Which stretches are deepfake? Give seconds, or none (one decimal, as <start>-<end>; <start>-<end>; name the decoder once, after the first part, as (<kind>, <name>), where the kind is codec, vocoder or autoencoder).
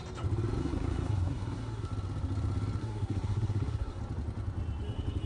0.6-1.9 (codec, SNAC); 2.8-4.0